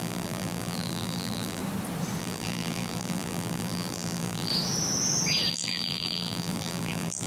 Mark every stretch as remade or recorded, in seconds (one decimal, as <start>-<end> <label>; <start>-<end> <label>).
0.0-1.6 remade; 1.6-2.2 recorded; 2.2-4.5 remade; 4.5-5.5 recorded; 5.5-7.3 remade